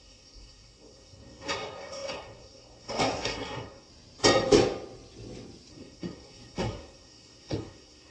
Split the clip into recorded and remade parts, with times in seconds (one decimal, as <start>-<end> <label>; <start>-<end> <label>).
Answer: 0.0-3.9 remade; 3.9-5.7 recorded; 5.7-8.1 remade